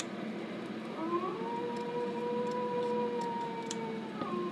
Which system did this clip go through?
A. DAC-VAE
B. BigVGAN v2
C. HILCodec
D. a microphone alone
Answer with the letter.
D